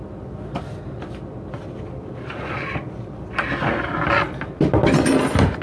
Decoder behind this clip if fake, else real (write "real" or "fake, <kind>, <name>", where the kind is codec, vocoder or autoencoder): real